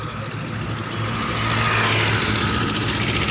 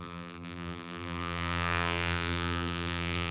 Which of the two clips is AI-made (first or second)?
second